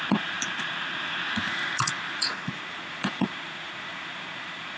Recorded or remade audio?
remade